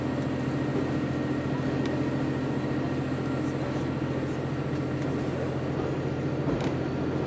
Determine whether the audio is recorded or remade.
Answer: recorded